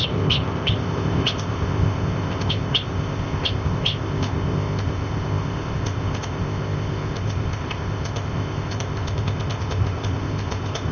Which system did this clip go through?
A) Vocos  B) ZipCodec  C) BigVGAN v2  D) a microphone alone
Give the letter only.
B